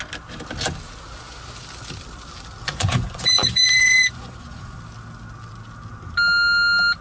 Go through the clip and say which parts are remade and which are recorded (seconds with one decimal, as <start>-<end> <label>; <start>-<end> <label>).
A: 0.0-2.6 recorded; 2.6-4.8 remade; 4.8-7.0 recorded